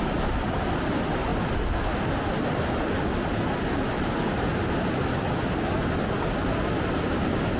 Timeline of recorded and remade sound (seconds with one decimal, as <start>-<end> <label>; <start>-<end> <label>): 0.0-7.6 recorded